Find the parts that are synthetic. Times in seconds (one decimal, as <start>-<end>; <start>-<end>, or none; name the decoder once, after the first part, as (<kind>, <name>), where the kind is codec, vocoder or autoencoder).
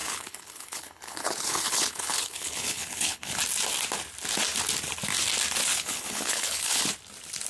0.0-3.4 (codec, HILCodec); 5.7-6.8